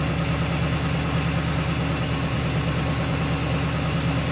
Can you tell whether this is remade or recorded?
recorded